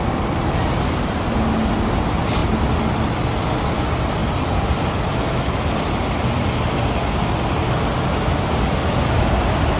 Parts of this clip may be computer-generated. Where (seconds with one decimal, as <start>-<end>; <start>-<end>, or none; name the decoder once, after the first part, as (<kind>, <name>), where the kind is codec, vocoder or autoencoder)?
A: none